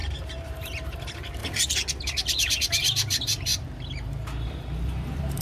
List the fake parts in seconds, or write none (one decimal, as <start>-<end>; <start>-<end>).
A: 0.0-1.4; 2.0-5.4